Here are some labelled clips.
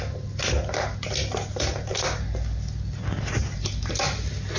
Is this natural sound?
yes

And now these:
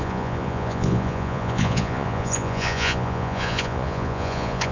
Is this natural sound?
no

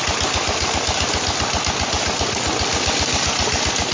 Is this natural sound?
yes